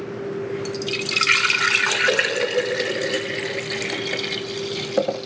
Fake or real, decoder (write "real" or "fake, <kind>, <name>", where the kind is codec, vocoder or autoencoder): real